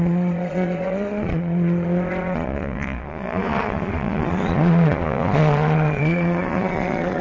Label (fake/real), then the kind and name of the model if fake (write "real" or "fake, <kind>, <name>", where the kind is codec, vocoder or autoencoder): fake, vocoder, Vocos